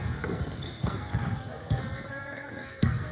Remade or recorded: remade